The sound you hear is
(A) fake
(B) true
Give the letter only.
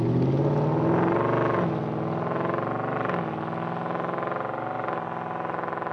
B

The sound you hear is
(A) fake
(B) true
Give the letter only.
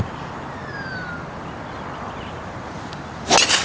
B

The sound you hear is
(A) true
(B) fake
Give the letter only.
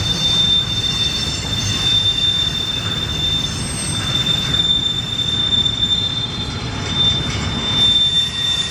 A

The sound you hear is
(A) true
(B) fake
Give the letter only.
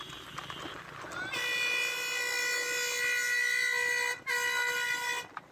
A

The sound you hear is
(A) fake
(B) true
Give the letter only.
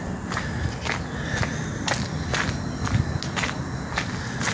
B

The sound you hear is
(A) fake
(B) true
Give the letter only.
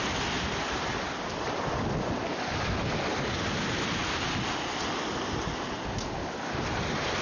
B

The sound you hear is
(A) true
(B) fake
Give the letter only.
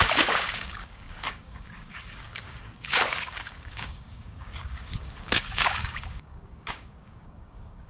B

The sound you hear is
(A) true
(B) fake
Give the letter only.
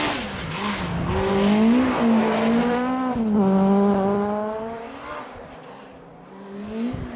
A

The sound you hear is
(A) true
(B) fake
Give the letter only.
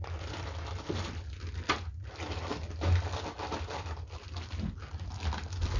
A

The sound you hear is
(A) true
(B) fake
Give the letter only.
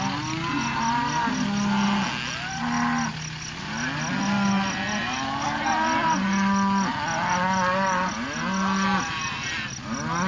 A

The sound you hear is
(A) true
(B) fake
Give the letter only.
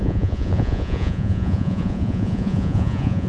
B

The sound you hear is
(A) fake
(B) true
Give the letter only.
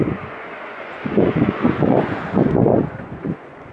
A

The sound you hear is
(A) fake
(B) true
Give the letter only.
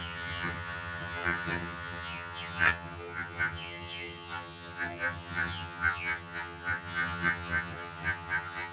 A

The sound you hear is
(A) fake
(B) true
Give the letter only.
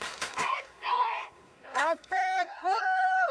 A